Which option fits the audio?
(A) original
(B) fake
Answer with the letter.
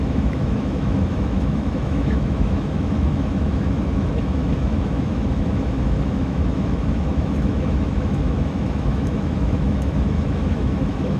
B